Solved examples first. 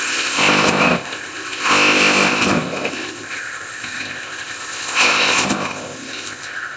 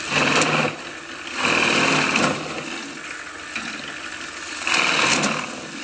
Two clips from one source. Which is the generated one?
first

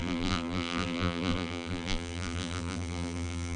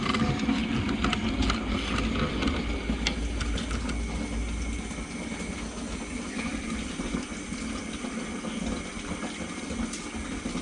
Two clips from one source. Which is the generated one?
first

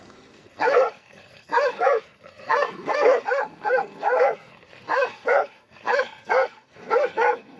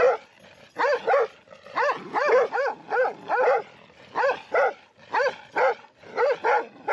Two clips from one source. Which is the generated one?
first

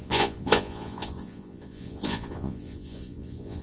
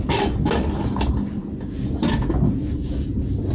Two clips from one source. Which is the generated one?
first